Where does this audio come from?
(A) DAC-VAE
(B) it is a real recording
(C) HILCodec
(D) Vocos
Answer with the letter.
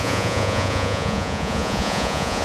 D